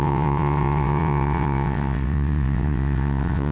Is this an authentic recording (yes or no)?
no